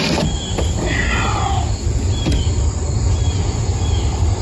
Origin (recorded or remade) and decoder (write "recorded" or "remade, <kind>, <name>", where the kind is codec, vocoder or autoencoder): recorded